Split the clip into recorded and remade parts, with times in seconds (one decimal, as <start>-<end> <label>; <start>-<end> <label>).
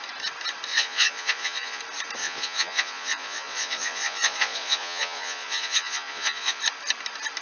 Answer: 0.0-0.7 recorded; 0.7-1.8 remade; 1.8-2.2 recorded; 2.2-6.6 remade; 6.6-7.4 recorded